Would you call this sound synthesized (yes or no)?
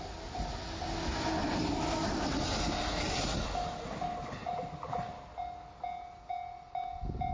no